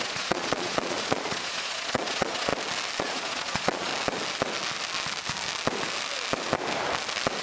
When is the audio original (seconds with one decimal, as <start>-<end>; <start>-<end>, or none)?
2.5-3.0; 3.9-7.4